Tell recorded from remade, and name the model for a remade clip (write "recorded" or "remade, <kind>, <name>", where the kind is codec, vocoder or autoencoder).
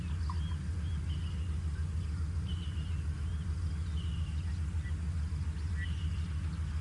recorded